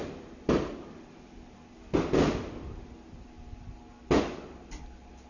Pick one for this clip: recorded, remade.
recorded